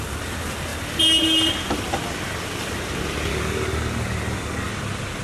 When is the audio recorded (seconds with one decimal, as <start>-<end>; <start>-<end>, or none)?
0.0-3.3; 4.7-5.2